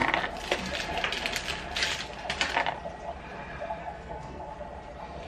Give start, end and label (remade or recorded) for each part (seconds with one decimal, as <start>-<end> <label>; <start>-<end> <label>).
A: 0.0-3.8 recorded; 3.8-4.5 remade; 4.5-5.3 recorded